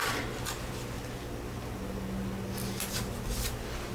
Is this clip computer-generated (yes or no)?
no